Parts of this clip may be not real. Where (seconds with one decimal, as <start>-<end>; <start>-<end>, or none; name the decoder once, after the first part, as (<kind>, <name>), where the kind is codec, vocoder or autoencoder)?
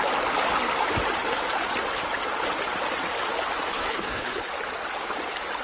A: 3.7-4.5 (codec, HILCodec)